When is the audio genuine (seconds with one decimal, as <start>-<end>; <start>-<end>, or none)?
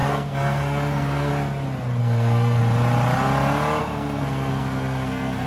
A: 1.3-2.0; 2.6-3.8